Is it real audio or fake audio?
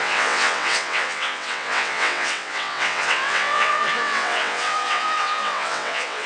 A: fake